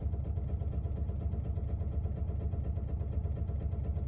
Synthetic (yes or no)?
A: no